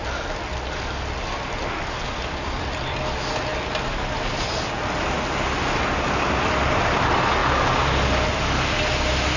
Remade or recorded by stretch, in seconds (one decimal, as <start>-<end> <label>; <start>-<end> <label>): 0.0-9.4 recorded